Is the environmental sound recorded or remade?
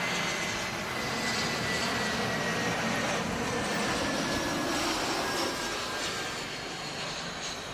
recorded